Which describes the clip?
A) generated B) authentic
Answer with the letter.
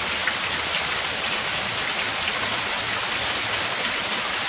A